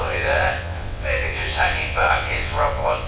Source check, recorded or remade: remade